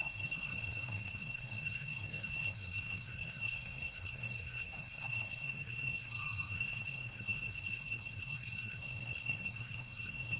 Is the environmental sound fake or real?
fake